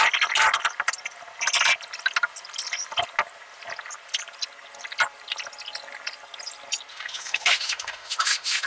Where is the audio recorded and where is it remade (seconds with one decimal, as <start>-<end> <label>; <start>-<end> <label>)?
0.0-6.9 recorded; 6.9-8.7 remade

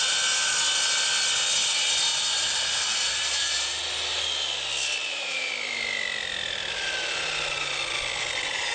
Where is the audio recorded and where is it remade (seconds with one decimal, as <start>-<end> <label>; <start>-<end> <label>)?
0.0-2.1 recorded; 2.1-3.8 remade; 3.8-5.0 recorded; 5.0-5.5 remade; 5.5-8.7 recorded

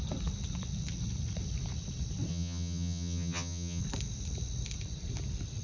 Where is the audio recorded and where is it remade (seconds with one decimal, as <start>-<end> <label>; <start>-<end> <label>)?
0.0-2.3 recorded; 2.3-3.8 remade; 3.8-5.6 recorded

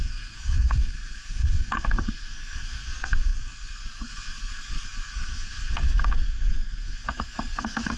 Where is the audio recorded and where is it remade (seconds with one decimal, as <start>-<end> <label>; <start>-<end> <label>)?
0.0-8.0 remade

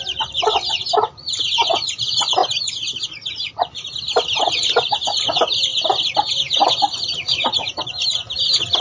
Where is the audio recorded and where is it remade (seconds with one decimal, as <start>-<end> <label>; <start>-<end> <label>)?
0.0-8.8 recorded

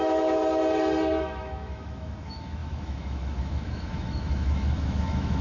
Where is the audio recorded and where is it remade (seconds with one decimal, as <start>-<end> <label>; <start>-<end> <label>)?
0.0-0.4 remade; 0.4-1.2 recorded; 1.2-5.4 remade